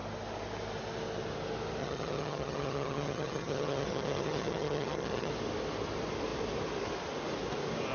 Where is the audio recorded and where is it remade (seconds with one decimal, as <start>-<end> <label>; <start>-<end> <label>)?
0.0-1.8 recorded; 1.8-5.3 remade; 5.3-7.9 recorded